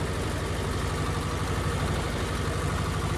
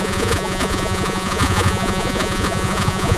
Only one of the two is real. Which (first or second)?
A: first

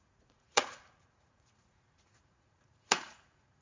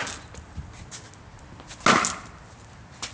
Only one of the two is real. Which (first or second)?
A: second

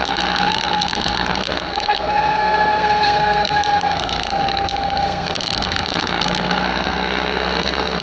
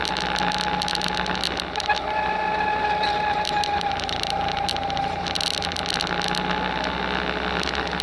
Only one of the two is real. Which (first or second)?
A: second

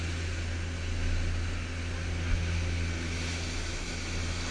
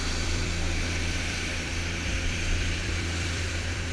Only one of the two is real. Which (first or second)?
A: first